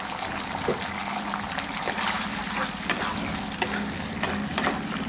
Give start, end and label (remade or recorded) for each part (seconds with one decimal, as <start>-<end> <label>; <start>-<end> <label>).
0.0-1.0 recorded; 1.0-2.4 remade; 2.4-5.1 recorded